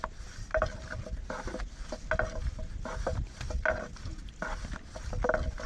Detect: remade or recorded recorded